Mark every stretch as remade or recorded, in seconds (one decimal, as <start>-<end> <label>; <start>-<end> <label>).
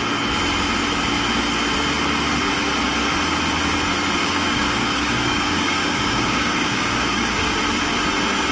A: 0.0-4.2 recorded; 4.2-7.5 remade; 7.5-8.5 recorded